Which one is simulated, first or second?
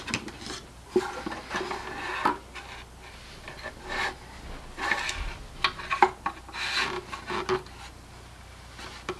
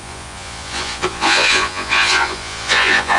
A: second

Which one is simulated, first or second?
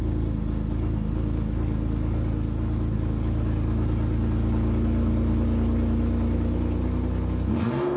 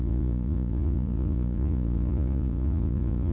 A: second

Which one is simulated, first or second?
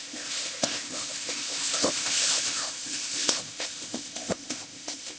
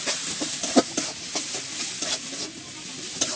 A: first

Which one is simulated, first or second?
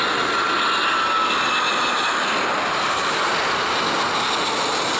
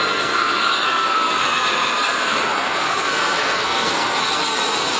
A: second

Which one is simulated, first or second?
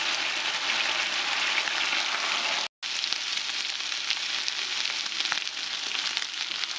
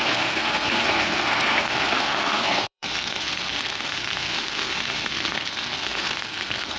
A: second